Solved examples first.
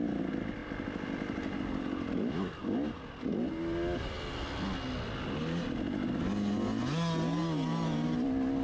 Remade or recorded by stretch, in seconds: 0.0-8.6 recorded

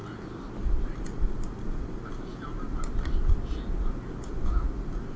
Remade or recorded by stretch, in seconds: 0.0-5.2 recorded

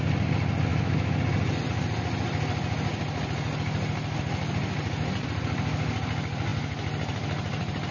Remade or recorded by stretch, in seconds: 0.0-0.7 recorded; 0.7-1.2 remade; 1.2-7.9 recorded

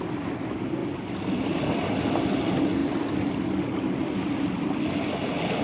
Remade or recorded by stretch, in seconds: 0.0-0.8 recorded; 0.8-2.0 remade; 2.0-5.6 recorded

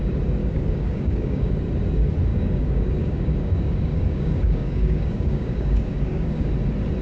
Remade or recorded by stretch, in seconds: 0.0-0.4 recorded; 0.4-1.5 remade; 1.5-2.3 recorded; 2.3-6.5 remade; 6.5-7.0 recorded